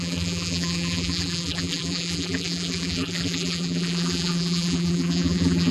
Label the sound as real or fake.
fake